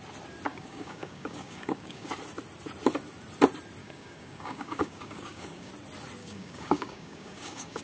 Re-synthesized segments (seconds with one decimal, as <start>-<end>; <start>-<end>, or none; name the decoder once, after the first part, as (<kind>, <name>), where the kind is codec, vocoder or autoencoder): 0.5-2.1 (codec, DAC); 3.8-5.7; 6.2-7.8